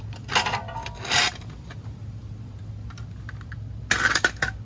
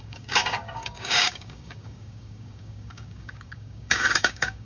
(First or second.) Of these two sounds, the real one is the first